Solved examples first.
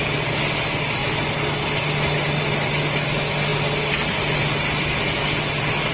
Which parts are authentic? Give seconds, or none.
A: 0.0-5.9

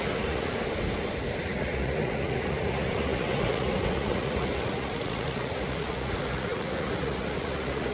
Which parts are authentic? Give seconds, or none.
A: 0.5-1.4

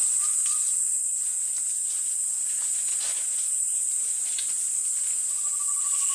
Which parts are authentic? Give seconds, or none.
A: 0.0-2.9; 4.5-6.1

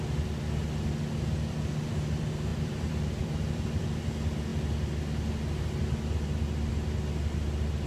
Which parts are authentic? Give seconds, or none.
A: 0.0-2.5; 4.0-7.9